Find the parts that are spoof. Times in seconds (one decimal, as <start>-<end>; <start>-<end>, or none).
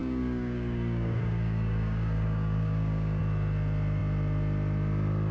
0.0-3.2